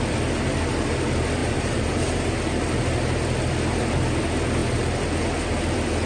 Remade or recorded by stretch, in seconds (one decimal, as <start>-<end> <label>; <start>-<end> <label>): 0.0-1.4 recorded; 1.4-2.2 remade; 2.2-6.1 recorded